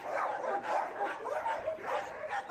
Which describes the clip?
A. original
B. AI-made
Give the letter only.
B